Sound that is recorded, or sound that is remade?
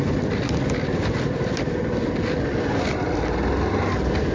recorded